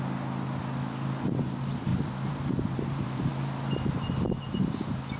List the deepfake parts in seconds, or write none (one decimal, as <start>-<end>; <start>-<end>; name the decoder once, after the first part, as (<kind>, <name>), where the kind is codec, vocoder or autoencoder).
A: 1.9-3.3 (vocoder, BigVGAN v2)